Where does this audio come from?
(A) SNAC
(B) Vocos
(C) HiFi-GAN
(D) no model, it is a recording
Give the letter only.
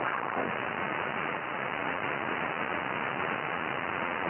B